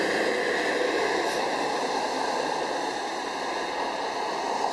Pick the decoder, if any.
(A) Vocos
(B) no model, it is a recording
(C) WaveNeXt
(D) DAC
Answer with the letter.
B